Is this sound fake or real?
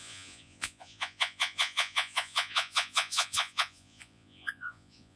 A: fake